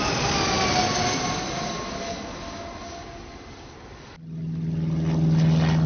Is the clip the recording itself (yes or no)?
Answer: yes